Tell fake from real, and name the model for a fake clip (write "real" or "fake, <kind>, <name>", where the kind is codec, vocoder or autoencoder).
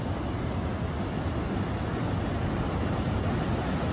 real